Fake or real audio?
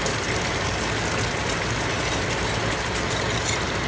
real